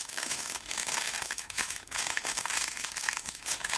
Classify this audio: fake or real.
fake